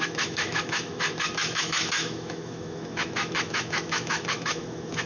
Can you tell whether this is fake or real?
fake